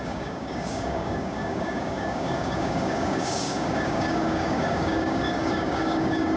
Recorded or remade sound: remade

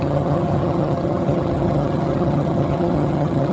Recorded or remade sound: remade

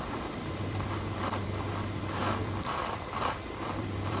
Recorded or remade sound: remade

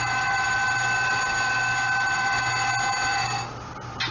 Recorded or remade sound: recorded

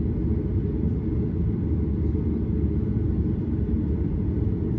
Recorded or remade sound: recorded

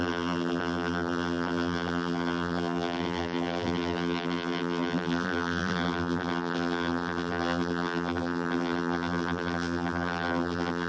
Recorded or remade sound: remade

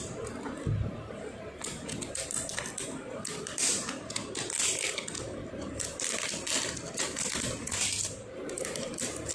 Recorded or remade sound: recorded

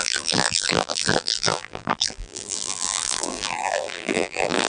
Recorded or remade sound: remade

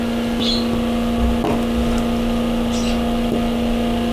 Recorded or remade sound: recorded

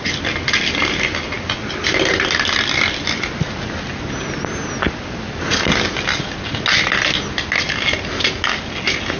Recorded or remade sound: recorded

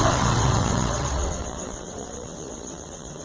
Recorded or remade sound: remade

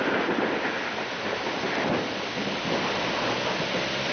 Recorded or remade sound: recorded